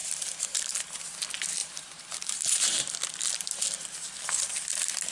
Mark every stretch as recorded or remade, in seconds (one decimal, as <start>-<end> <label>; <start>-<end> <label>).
0.0-1.0 remade; 1.0-1.6 recorded; 1.6-2.9 remade; 2.9-5.1 recorded